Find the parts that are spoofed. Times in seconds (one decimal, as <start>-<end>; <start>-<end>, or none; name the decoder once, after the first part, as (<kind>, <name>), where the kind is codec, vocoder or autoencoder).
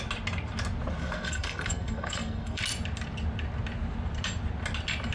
1.0-2.6 (codec, SNAC)